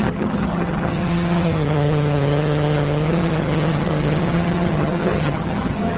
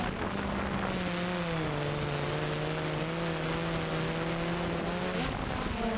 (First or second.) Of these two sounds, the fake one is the first